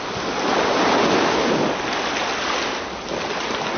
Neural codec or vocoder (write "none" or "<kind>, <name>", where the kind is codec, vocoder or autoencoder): none